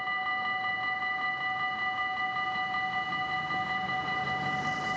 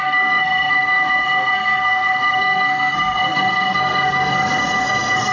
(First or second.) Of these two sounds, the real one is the first